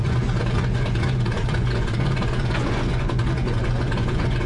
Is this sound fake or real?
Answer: fake